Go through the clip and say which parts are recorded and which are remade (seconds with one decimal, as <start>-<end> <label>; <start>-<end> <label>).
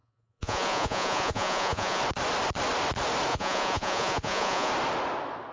0.0-2.0 remade; 2.0-3.3 recorded; 3.3-4.7 remade; 4.7-5.5 recorded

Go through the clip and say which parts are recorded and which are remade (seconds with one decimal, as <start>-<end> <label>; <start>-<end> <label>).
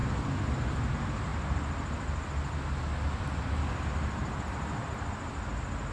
0.0-5.9 recorded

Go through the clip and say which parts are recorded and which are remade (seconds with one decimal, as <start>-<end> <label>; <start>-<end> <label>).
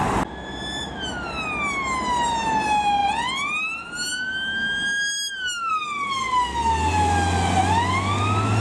0.0-8.6 recorded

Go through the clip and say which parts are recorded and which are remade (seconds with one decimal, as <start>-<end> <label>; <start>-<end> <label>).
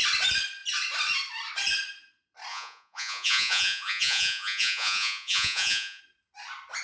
0.0-2.5 recorded; 2.5-6.0 remade; 6.0-6.8 recorded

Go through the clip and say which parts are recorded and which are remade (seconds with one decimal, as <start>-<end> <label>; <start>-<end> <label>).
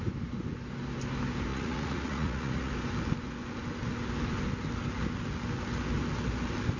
0.0-1.5 recorded; 1.5-2.7 remade; 2.7-6.8 recorded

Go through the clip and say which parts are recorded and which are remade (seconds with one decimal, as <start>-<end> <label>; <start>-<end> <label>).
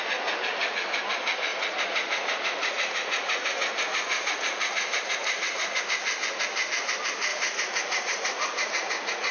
0.0-1.5 recorded; 1.5-5.8 remade; 5.8-7.3 recorded; 7.3-9.3 remade